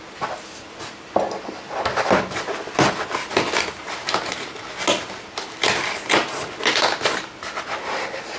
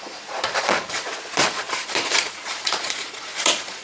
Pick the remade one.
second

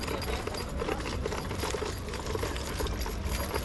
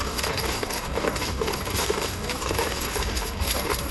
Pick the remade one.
second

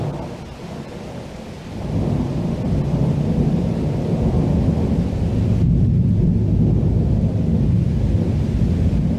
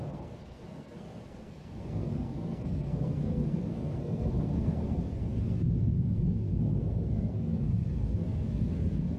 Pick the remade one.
second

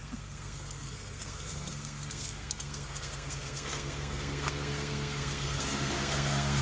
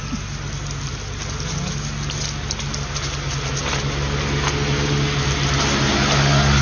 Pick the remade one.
first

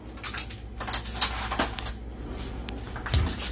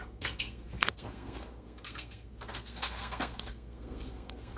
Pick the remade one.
second